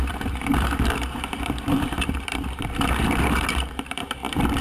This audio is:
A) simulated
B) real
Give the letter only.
A